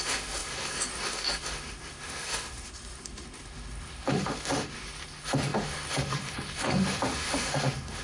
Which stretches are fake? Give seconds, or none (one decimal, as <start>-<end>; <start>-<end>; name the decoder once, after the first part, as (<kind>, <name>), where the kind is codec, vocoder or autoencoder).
0.0-8.0 (autoencoder, DAC-VAE)